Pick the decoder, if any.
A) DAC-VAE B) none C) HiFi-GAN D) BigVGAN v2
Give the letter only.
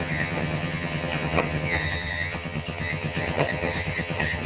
C